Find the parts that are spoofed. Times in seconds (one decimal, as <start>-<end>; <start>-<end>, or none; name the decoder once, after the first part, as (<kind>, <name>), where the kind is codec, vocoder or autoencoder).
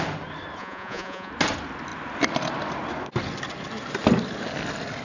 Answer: 0.6-1.3 (vocoder, Vocos)